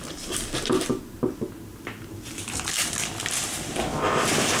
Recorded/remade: recorded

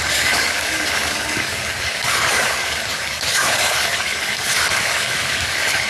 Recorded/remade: remade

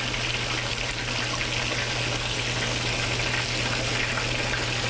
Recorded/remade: recorded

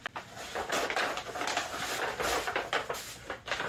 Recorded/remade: recorded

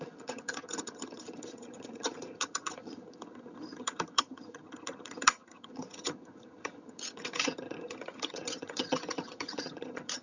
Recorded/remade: remade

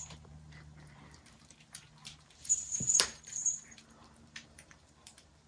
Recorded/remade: remade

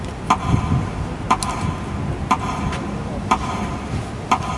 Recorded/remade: recorded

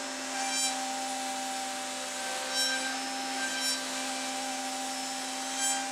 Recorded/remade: recorded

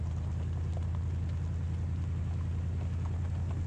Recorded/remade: recorded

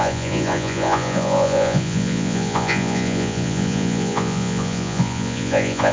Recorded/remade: remade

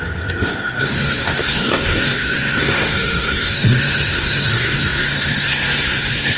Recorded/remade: remade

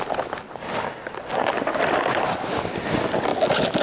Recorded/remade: recorded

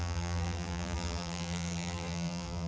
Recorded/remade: remade